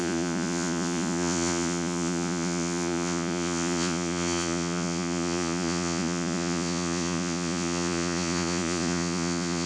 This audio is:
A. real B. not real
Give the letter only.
B